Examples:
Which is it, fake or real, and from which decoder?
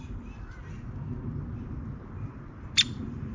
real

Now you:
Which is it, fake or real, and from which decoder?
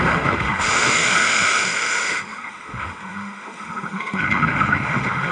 fake, autoencoder, DAC-VAE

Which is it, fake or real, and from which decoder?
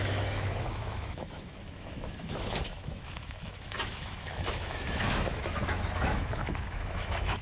fake, autoencoder, DAC-VAE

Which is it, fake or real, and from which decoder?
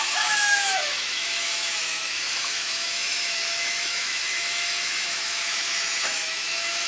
fake, autoencoder, DAC-VAE